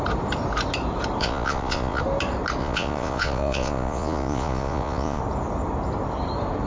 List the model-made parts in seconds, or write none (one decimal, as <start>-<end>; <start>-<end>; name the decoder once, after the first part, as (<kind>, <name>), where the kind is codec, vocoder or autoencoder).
1.2-2.0 (vocoder, Vocos); 2.6-5.2